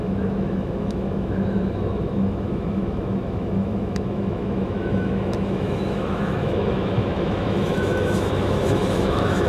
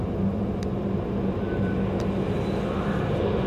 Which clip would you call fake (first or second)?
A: first